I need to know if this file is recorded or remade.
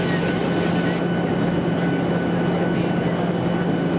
recorded